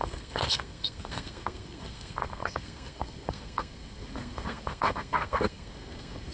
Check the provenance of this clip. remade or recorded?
remade